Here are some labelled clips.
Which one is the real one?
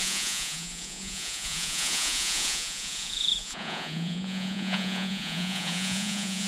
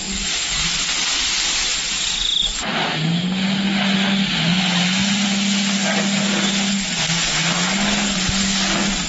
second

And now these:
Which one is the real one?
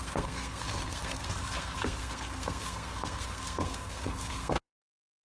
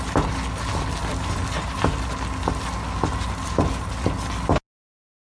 second